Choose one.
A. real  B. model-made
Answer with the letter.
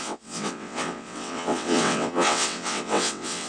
B